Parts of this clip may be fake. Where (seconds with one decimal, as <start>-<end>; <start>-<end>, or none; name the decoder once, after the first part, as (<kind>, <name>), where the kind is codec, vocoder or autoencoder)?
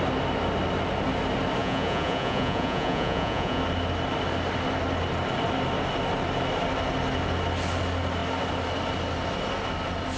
1.6-3.6 (vocoder, Vocos)